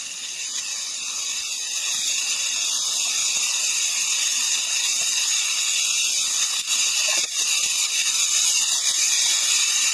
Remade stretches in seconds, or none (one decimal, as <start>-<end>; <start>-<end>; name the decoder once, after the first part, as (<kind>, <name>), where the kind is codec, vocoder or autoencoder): none